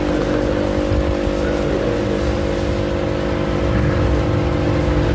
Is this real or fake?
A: real